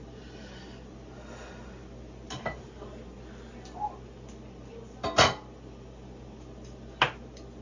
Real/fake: real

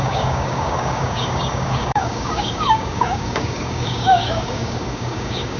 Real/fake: fake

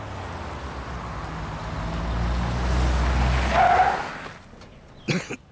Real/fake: real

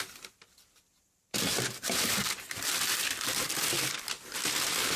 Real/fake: fake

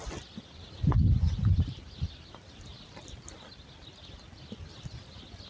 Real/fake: real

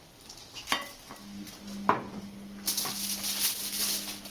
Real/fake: real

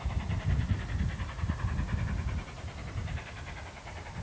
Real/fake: real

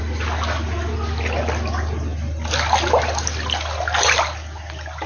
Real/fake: real